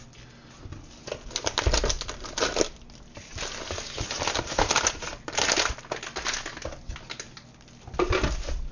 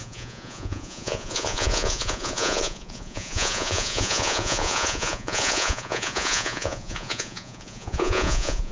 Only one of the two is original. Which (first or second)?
first